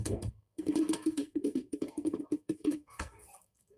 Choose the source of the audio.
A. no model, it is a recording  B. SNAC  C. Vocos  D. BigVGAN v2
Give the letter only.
B